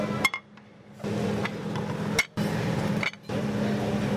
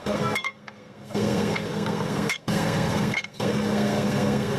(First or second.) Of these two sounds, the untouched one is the first